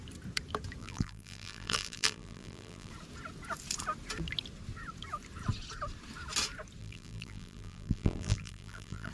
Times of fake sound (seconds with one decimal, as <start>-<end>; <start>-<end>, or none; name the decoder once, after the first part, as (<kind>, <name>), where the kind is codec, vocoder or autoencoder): 0.8-2.9 (vocoder, BigVGAN v2); 6.8-9.1